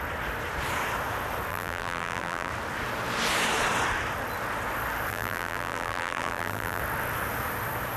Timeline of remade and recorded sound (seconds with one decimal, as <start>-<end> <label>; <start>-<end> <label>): 0.0-1.5 recorded; 1.5-2.5 remade; 2.5-5.1 recorded; 5.1-6.8 remade; 6.8-8.0 recorded